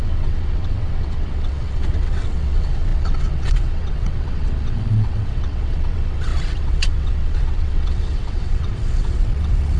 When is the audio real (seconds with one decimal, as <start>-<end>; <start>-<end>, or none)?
none